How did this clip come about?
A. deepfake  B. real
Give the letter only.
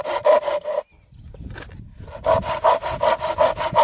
B